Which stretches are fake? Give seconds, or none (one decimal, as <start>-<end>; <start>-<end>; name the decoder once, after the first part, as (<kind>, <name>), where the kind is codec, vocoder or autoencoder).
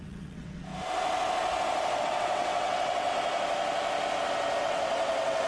0.0-0.7 (vocoder, WaveNeXt); 2.0-3.1; 4.6-5.5